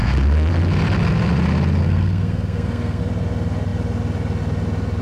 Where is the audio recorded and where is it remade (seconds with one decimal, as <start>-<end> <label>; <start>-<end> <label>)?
0.0-0.5 remade; 0.5-1.8 recorded; 1.8-3.0 remade; 3.0-5.0 recorded